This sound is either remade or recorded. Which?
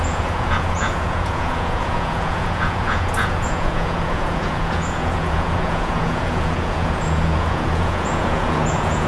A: remade